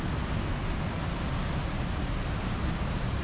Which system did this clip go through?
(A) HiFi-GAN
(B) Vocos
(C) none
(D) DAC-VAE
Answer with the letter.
C